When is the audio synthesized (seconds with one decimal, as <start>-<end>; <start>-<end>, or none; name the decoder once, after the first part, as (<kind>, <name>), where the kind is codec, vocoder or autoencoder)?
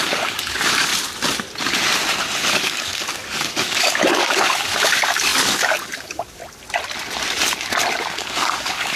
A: 0.0-0.9 (codec, DAC); 2.5-6.4; 8.0-9.0